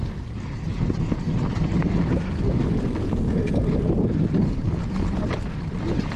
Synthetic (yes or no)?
no